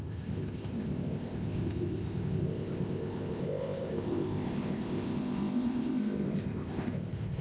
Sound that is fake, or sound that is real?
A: fake